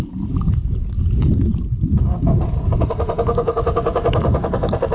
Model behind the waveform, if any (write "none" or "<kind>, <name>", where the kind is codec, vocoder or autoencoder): none